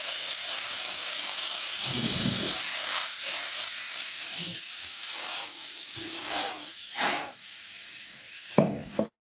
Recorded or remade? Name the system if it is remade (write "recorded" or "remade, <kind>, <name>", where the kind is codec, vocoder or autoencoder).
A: remade, codec, DAC